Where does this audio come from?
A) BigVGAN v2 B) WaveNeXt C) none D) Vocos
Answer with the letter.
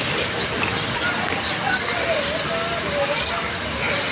C